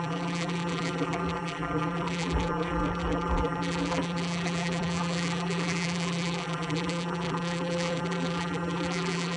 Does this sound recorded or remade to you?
remade